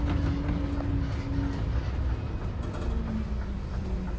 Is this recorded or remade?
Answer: recorded